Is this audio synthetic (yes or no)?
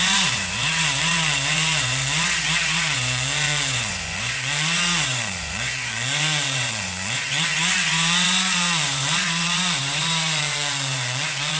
yes